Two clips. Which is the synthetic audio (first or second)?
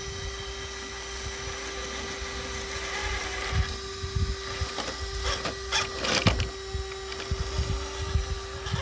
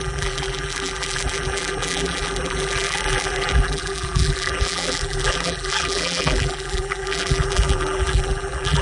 second